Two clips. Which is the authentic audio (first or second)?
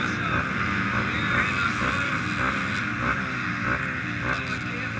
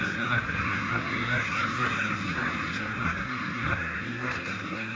first